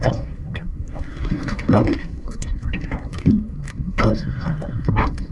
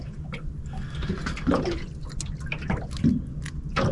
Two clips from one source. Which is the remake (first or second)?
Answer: first